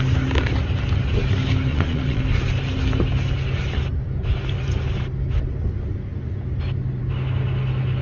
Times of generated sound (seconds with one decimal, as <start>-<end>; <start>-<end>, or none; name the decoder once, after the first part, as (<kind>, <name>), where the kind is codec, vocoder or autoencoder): 1.7-2.2 (vocoder, Vocos)